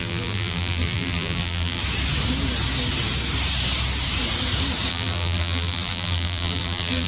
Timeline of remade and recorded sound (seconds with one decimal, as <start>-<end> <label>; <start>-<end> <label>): 0.0-1.8 remade; 1.8-4.9 recorded; 4.9-7.1 remade